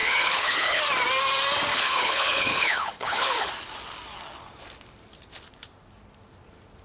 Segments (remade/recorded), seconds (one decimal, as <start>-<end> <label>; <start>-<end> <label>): 0.0-0.8 remade; 0.8-1.7 recorded; 1.7-3.5 remade; 3.5-6.8 recorded